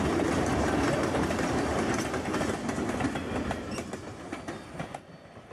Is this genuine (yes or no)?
yes